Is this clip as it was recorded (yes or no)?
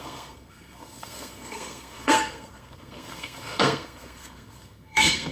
no